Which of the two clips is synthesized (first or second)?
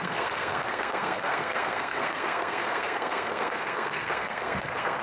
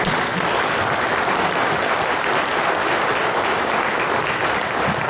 first